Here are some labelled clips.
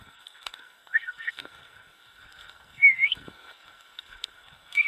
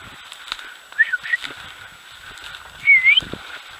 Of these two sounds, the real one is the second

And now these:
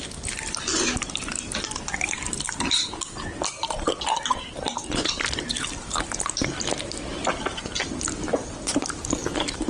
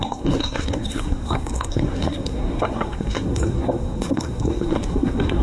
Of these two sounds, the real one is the first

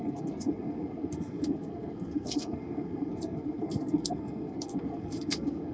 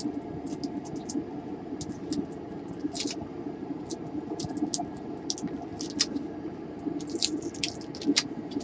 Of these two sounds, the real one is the second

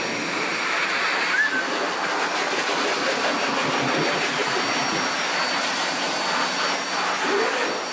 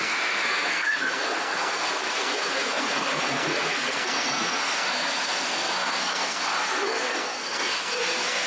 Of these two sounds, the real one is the first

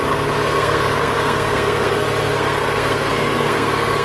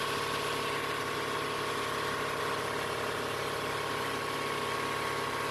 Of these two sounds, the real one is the second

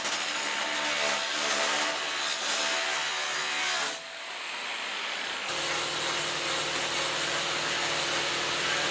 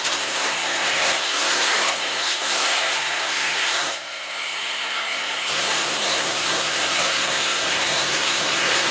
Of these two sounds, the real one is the first